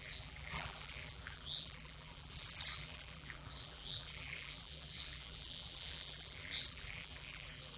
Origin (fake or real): fake